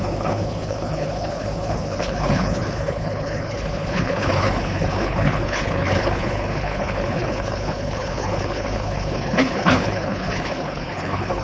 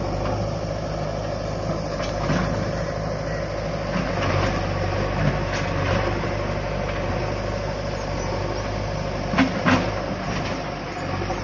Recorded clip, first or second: second